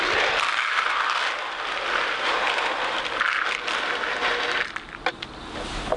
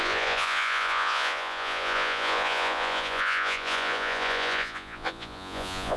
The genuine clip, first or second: first